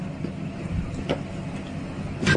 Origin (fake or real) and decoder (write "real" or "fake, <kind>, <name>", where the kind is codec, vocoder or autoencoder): real